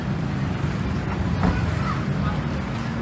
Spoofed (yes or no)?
no